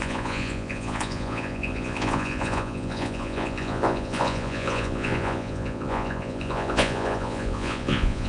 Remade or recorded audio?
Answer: remade